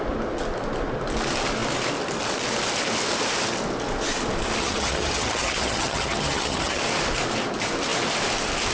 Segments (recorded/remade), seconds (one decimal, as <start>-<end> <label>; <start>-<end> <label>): 0.0-4.6 recorded; 4.6-6.8 remade; 6.8-8.7 recorded